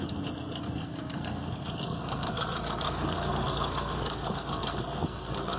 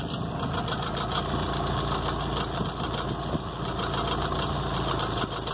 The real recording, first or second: second